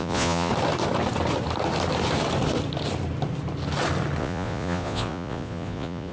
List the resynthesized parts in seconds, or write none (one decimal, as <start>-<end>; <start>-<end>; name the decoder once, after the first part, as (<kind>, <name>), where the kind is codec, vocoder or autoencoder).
0.0-0.5 (vocoder, Vocos); 4.2-6.1